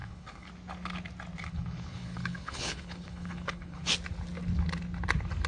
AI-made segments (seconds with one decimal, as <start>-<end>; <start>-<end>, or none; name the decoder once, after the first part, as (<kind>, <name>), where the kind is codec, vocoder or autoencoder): 0.0-0.5 (codec, HILCodec); 1.4-3.9

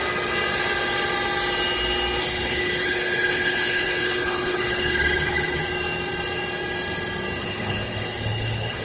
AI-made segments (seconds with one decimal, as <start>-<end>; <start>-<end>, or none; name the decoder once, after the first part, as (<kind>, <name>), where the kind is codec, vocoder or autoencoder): 2.2-5.6 (codec, HILCodec); 7.4-8.8

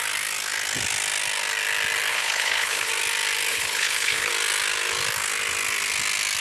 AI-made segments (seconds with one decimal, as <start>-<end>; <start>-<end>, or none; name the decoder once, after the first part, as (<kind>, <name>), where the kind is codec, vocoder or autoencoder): 2.1-2.9 (codec, HILCodec); 3.5-4.3

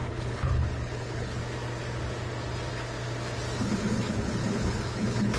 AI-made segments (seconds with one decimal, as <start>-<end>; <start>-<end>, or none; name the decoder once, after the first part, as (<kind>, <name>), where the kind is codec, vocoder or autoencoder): 0.0-1.4 (codec, HILCodec); 3.6-5.4

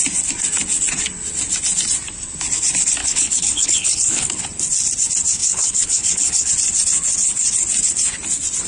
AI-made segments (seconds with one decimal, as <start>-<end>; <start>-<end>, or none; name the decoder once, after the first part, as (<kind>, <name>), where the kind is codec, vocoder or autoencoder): 3.0-4.4 (codec, HILCodec); 5.4-6.5

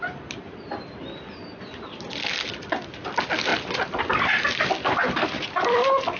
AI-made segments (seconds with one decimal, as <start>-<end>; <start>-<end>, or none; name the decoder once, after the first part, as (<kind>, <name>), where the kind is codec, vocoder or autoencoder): none

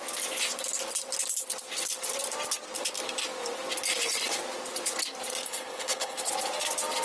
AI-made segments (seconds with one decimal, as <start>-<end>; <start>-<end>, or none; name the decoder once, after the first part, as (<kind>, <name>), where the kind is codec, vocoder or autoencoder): 5.4-6.3 (codec, HILCodec)

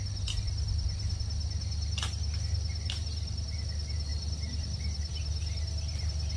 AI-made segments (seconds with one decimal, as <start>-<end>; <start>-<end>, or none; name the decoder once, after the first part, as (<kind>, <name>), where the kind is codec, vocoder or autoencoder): none